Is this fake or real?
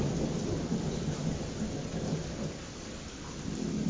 real